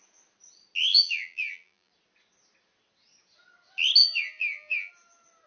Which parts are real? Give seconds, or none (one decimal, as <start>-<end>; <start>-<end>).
0.0-0.9; 1.9-4.0; 4.9-5.5